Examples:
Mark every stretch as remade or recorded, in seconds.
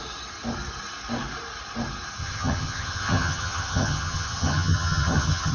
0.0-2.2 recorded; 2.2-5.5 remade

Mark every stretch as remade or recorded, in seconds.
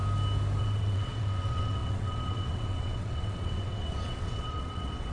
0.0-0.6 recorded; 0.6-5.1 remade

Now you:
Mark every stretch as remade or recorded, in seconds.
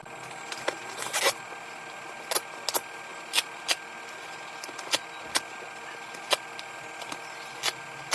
0.0-8.1 recorded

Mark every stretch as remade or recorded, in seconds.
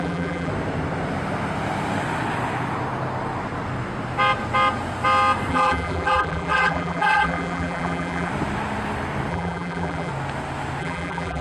0.0-0.5 remade; 0.5-5.5 recorded; 5.5-8.3 remade; 8.3-9.3 recorded; 9.3-10.1 remade; 10.1-10.8 recorded; 10.8-11.4 remade